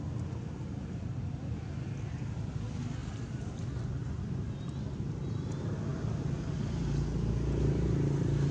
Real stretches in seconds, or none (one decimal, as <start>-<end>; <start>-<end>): 0.0-8.5